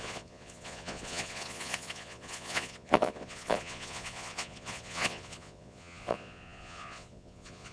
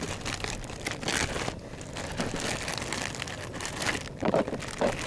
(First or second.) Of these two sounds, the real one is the second